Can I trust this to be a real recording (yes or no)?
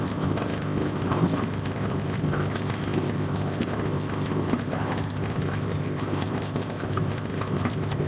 no